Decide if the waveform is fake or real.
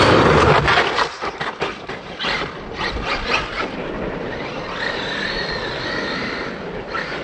fake